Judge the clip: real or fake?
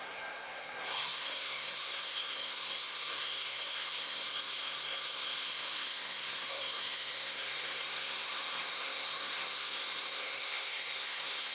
fake